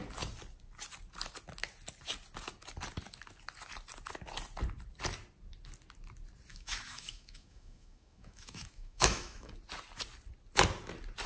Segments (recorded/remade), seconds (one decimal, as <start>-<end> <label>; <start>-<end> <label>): 0.0-6.5 recorded; 6.5-9.5 remade; 9.5-11.3 recorded